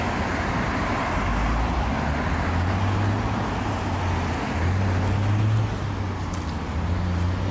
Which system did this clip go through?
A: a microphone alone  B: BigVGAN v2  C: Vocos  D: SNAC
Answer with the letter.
A